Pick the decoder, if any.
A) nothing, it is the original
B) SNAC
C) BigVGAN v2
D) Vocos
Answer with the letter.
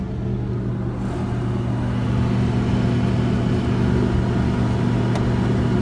A